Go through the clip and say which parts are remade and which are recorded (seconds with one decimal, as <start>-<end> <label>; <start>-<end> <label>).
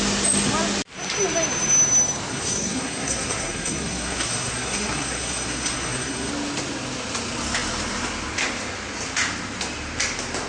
0.0-2.3 recorded; 2.3-6.3 remade; 6.3-10.5 recorded